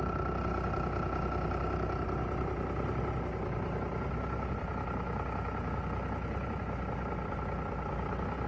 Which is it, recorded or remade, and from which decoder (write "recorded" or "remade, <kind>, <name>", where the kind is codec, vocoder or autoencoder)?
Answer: recorded